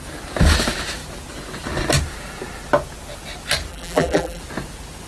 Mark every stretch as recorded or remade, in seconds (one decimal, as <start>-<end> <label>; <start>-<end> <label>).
0.0-3.7 recorded; 3.7-4.4 remade; 4.4-5.1 recorded